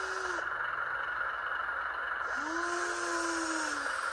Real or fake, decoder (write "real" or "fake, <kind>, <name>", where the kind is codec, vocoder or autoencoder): real